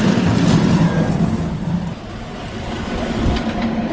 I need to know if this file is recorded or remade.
recorded